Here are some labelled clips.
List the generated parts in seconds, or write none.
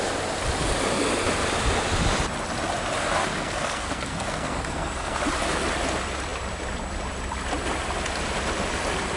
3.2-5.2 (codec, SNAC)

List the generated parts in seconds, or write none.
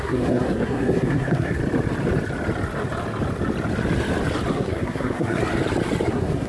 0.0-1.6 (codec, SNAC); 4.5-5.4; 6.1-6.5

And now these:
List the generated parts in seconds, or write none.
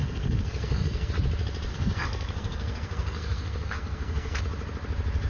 0.0-1.1 (codec, SNAC); 1.7-4.4